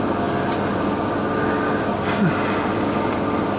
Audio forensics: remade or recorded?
recorded